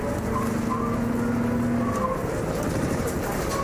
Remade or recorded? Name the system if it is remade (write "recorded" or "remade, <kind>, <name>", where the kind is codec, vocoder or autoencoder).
recorded